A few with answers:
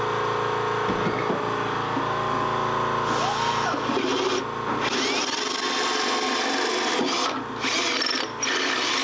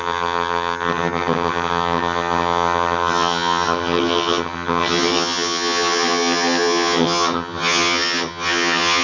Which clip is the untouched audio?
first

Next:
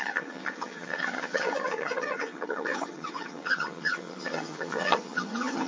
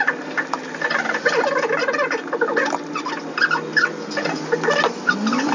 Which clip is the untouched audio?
second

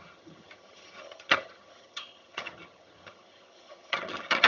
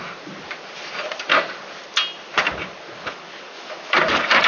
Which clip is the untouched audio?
second